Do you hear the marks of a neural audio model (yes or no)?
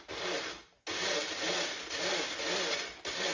no